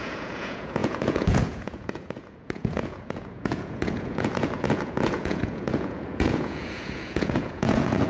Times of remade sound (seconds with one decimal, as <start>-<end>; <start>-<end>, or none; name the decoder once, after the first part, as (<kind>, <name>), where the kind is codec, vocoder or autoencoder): 0.0-8.1 (vocoder, Vocos)